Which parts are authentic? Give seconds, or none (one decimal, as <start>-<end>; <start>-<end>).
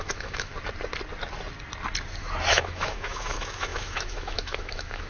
0.5-2.5